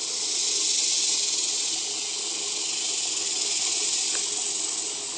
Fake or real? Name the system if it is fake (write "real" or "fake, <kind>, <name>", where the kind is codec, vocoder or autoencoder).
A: real